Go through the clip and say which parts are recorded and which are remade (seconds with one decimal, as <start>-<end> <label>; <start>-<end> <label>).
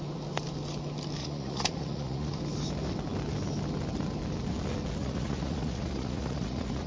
0.0-1.2 recorded; 1.2-2.4 remade; 2.4-5.0 recorded; 5.0-6.9 remade